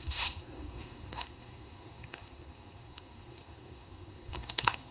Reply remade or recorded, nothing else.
remade